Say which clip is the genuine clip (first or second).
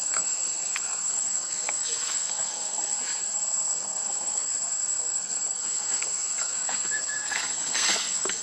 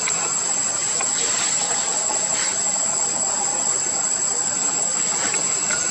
second